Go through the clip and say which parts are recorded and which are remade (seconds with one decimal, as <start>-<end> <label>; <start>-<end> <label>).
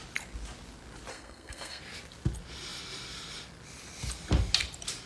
0.0-1.1 recorded; 1.1-1.8 remade; 1.8-5.1 recorded